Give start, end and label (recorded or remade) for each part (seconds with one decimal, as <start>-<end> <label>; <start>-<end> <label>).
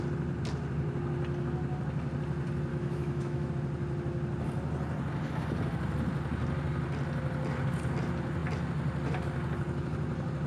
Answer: 0.0-2.7 recorded; 2.7-3.5 remade; 3.5-10.5 recorded